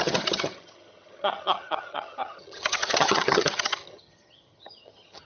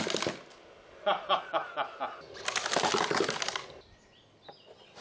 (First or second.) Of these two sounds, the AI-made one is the first